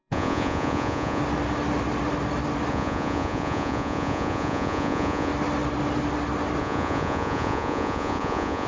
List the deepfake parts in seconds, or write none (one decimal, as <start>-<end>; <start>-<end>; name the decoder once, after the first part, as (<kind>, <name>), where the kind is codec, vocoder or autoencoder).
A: 0.0-1.2 (vocoder, Vocos); 2.7-5.3; 6.6-8.7